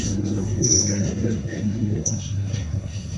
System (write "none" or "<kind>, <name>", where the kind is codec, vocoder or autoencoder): codec, SNAC